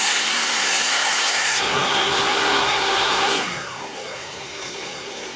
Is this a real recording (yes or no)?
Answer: no